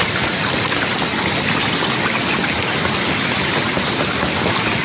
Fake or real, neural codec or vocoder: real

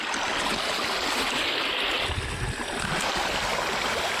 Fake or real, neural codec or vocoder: real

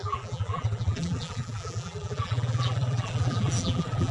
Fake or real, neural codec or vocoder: fake, vocoder, BigVGAN v2